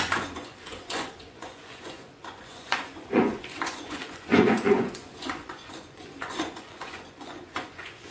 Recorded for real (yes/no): no